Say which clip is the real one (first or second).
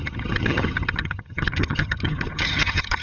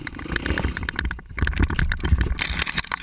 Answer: second